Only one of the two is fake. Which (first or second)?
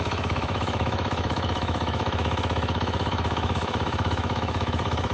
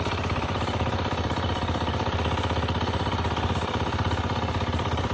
first